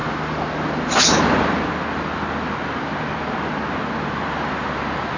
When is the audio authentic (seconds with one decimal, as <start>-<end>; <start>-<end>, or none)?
0.0-5.2